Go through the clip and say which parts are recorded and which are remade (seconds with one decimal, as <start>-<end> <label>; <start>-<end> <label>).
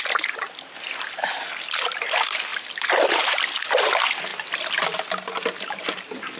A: 0.0-6.4 recorded